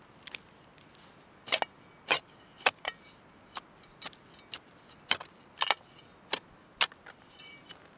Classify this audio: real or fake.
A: real